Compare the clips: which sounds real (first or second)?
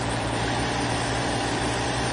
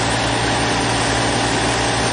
second